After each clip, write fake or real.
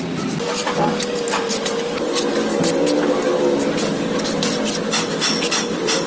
real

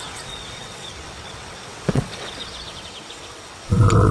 fake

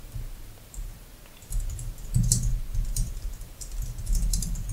real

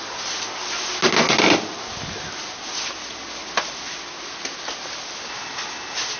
real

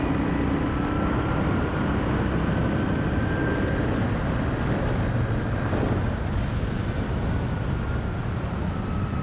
real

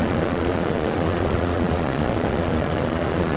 fake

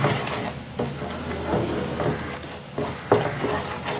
real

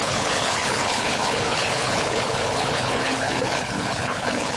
fake